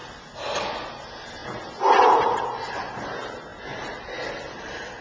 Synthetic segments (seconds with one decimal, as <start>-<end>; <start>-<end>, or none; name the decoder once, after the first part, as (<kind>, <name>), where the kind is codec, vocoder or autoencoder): none